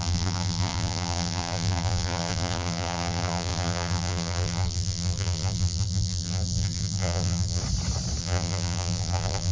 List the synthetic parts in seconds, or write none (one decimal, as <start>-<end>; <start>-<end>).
0.0-7.6; 8.2-9.5